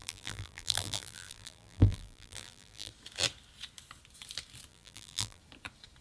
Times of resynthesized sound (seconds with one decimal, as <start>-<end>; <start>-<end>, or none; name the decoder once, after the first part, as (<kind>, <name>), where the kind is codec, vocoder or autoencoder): 0.0-2.9 (vocoder, BigVGAN v2); 4.7-5.4